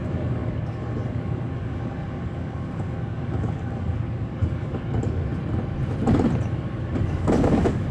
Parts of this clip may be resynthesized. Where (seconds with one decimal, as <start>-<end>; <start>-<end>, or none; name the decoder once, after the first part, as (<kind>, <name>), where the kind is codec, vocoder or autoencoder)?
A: 0.0-5.3 (codec, DAC); 6.5-7.9